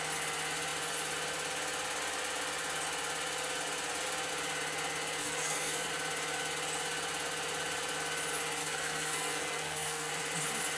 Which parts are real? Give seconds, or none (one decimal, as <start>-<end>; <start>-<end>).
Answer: 0.0-5.2; 5.9-8.6; 10.1-10.8